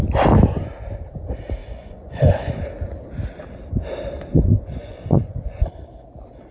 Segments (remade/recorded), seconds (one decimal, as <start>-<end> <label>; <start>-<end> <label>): 0.0-1.6 recorded; 1.6-2.6 remade; 2.6-4.3 recorded; 4.3-5.7 remade; 5.7-6.5 recorded